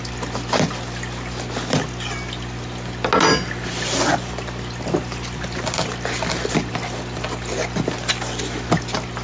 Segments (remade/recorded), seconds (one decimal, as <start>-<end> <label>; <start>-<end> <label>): 0.0-9.2 recorded